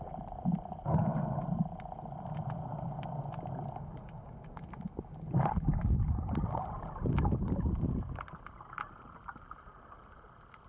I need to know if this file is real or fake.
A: real